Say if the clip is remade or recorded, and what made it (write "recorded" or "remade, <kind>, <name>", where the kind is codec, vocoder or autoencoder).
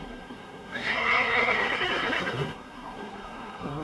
remade, codec, SNAC